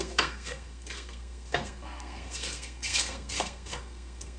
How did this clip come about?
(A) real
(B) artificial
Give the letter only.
B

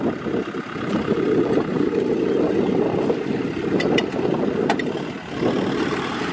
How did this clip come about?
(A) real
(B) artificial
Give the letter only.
A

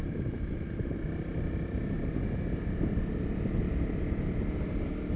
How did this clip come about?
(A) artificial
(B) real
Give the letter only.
B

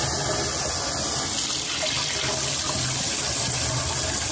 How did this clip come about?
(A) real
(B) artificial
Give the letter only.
A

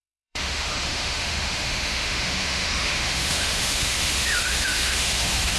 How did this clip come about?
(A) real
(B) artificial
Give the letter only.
B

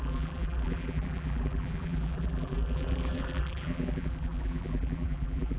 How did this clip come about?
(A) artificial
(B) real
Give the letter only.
A